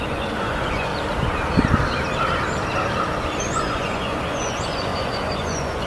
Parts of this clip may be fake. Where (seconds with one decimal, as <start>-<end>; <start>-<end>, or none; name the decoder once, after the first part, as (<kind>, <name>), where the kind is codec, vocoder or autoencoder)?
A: 0.0-0.9 (vocoder, Vocos); 3.4-5.9